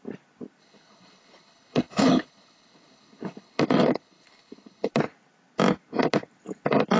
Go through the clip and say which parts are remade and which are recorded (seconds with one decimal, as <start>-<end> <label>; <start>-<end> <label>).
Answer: 0.0-0.6 recorded; 0.6-3.6 remade; 3.6-4.0 recorded; 4.0-4.9 remade; 4.9-7.0 recorded

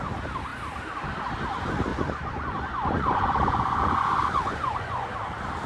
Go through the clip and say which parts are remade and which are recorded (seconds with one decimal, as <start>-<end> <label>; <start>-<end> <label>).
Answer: 0.0-1.9 recorded; 1.9-5.1 remade; 5.1-5.7 recorded

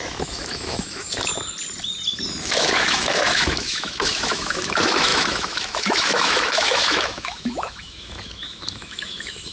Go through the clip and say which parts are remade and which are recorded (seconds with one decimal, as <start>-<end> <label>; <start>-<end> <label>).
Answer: 0.0-1.3 remade; 1.3-2.4 recorded; 2.4-9.5 remade